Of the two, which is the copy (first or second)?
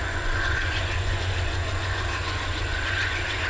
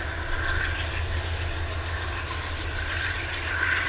first